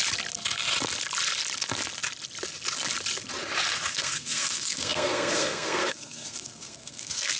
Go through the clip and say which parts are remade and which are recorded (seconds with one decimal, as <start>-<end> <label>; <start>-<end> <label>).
0.0-3.9 recorded; 3.9-7.4 remade